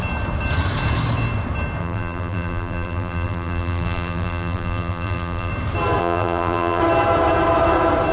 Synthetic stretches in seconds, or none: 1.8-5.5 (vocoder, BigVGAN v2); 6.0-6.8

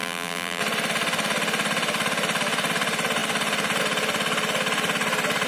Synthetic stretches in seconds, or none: 0.0-0.6 (vocoder, BigVGAN v2)

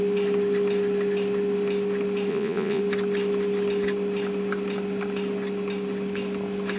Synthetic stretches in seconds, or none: 2.3-2.8 (vocoder, Vocos)

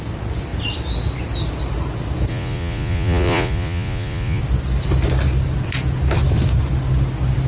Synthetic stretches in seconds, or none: 2.3-4.4 (vocoder, Vocos)

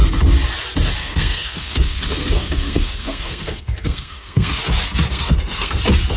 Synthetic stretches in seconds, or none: 1.0-4.6 (codec, SNAC); 5.1-5.8

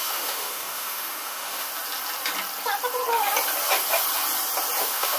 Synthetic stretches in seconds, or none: 0.0-1.7 (autoencoder, DAC-VAE); 4.8-5.2

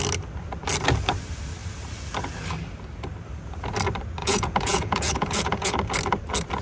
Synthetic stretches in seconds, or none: 4.2-5.7 (vocoder, Vocos)

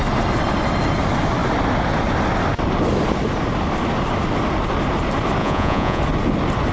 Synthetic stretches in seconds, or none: 5.4-6.0 (vocoder, Vocos)